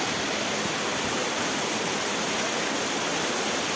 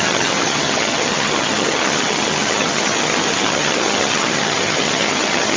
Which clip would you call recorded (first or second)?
first